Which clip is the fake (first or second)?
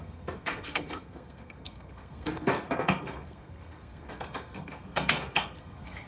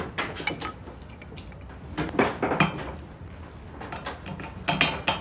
first